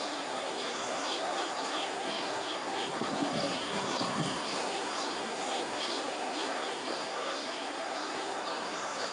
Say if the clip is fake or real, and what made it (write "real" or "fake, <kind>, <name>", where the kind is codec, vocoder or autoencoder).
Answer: fake, codec, SNAC